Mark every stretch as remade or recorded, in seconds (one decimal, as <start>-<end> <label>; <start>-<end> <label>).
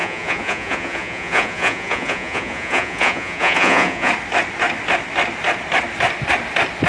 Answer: 0.0-4.1 remade; 4.1-6.9 recorded